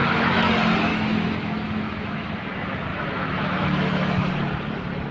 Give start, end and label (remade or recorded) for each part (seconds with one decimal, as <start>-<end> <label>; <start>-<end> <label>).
0.0-0.5 remade; 0.5-0.9 recorded; 0.9-2.4 remade; 2.4-2.9 recorded; 2.9-4.3 remade; 4.3-5.1 recorded